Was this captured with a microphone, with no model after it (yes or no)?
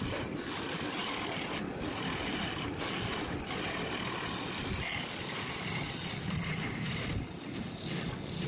yes